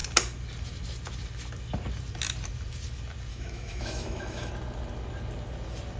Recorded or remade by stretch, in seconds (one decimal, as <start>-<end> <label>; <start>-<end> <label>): 0.0-3.3 recorded; 3.3-4.5 remade; 4.5-6.0 recorded